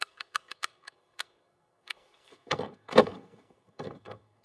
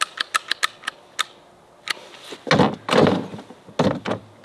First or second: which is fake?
first